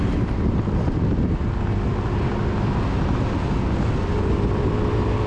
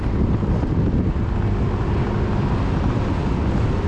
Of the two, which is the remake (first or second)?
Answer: second